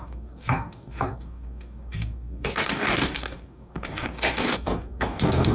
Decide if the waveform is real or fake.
fake